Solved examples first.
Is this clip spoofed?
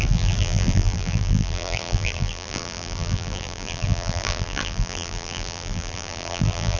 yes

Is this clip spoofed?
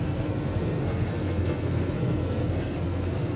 yes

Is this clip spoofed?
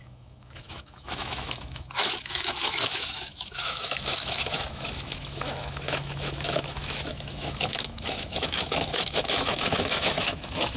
yes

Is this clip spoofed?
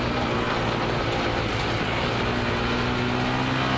no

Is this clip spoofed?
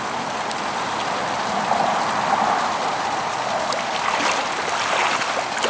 no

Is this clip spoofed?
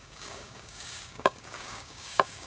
yes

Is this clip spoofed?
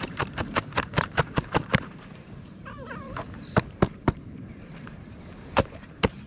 yes